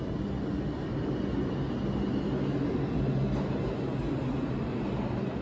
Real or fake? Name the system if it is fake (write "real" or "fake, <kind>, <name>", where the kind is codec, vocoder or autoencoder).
real